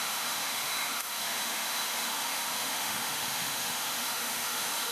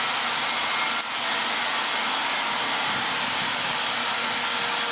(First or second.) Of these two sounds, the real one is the second